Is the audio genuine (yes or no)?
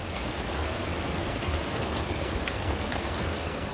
no